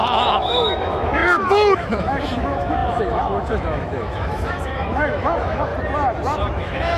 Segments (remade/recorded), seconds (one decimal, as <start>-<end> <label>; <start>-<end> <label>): 0.0-5.7 remade; 5.7-6.5 recorded; 6.5-7.0 remade